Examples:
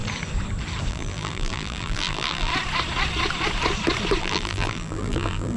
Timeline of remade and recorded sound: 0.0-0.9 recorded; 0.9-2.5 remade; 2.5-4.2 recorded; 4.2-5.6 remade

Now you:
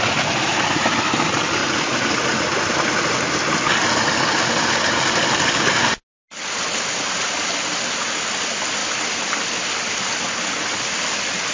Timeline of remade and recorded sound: 0.0-11.5 recorded